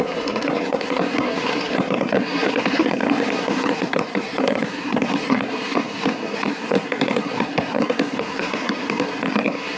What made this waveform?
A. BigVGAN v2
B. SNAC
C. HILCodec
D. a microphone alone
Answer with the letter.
B